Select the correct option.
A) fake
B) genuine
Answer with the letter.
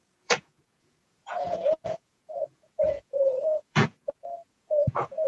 A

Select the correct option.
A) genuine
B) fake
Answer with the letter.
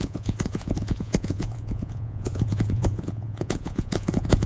B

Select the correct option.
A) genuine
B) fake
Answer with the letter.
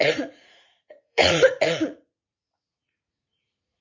B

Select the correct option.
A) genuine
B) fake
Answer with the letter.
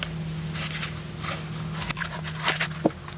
A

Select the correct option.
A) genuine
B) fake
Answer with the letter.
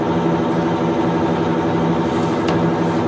A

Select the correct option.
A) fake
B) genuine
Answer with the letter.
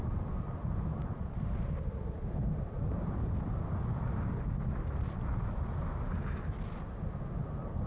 B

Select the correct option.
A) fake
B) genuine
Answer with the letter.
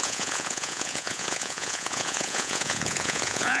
A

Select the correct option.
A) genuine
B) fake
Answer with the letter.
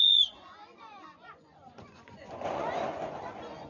B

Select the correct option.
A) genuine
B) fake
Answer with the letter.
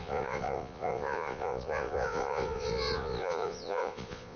B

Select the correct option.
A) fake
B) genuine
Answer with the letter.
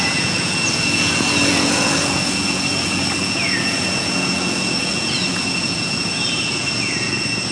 A